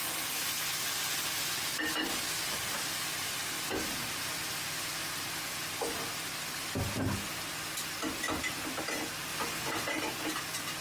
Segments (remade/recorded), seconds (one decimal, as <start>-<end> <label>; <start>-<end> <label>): 0.0-10.8 recorded